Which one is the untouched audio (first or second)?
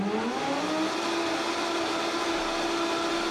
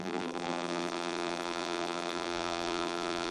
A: first